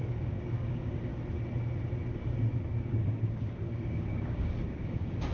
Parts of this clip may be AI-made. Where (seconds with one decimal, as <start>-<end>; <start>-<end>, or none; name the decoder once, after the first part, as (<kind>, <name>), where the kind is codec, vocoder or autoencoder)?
0.0-1.1 (codec, DAC); 2.9-5.3